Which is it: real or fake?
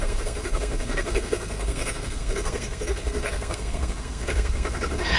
fake